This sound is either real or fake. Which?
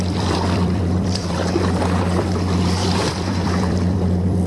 fake